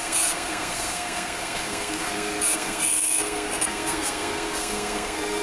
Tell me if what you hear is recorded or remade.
remade